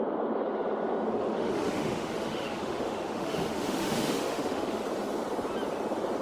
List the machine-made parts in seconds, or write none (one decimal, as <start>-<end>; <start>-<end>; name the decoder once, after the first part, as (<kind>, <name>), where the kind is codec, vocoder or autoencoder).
1.1-4.8 (autoencoder, DAC-VAE)